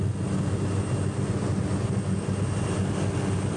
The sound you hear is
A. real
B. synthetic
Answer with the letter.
A